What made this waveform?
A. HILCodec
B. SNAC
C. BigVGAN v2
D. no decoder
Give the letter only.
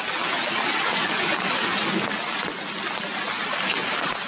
D